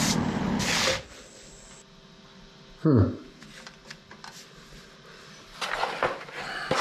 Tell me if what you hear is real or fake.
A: real